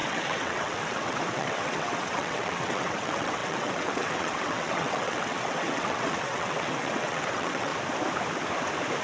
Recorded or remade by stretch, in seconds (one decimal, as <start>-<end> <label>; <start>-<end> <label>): 0.0-7.7 remade; 7.7-9.0 recorded